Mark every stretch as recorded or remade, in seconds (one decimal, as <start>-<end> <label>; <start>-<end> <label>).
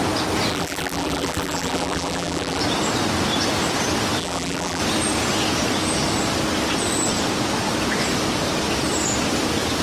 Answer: 0.0-0.5 recorded; 0.5-2.6 remade; 2.6-4.2 recorded; 4.2-4.8 remade; 4.8-9.8 recorded